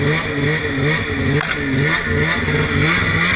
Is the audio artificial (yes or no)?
no